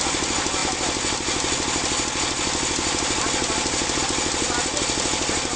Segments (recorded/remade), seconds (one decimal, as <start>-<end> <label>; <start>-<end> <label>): 0.0-5.6 recorded